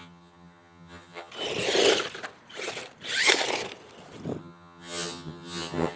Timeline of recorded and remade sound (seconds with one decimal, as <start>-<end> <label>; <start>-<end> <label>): 0.0-1.3 remade; 1.3-4.4 recorded; 4.4-6.0 remade